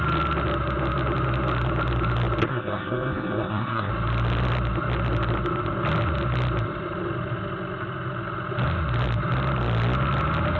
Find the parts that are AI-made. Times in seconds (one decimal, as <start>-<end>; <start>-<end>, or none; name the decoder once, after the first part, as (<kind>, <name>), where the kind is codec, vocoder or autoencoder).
2.4-3.9 (codec, SNAC)